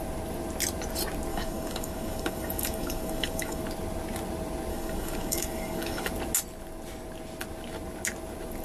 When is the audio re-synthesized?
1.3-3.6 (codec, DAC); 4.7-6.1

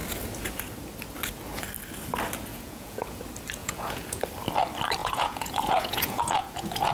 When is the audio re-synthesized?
2.5-3.2 (vocoder, Vocos); 3.6-4.2; 5.0-6.9

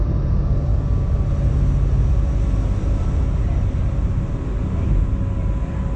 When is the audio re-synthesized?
none

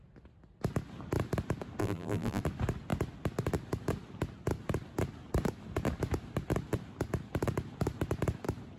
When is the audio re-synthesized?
1.8-2.4 (vocoder, BigVGAN v2)

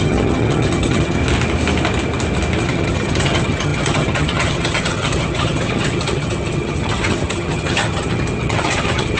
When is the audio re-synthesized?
0.0-1.2 (vocoder, HiFi-GAN); 2.6-9.2